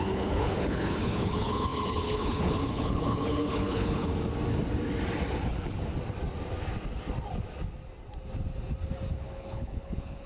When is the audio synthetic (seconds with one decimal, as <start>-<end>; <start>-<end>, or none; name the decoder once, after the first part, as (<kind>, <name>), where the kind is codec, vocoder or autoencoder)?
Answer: 0.0-4.1 (codec, HILCodec); 5.4-5.9; 9.1-10.3